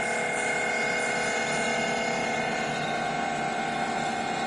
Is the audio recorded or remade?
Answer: recorded